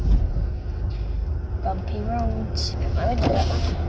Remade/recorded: recorded